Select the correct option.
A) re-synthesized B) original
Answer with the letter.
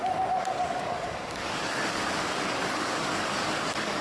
A